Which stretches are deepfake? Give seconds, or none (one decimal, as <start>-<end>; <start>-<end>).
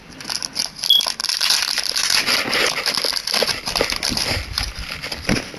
none